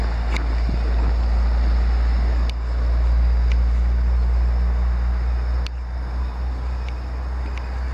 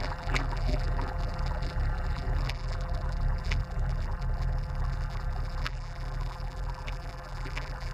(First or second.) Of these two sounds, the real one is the first